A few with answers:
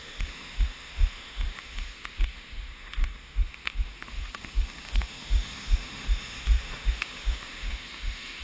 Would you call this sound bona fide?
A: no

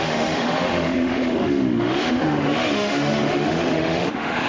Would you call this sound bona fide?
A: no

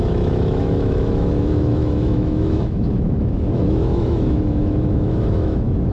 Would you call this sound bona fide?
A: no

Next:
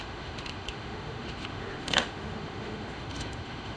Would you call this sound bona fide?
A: no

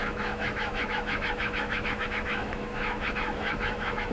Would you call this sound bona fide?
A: no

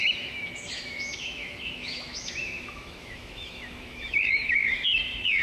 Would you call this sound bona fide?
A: no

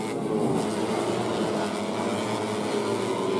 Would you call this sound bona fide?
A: yes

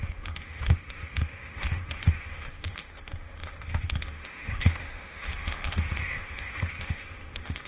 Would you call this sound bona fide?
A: no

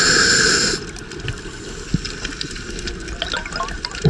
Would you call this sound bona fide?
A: yes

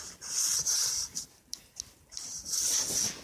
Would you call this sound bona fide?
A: yes